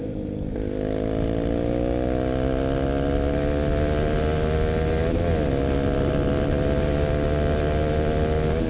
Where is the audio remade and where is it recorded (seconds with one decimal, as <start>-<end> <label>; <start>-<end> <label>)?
0.0-8.7 recorded